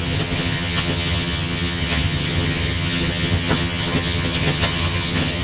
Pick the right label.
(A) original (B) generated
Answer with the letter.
B